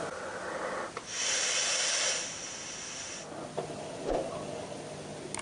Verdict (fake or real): real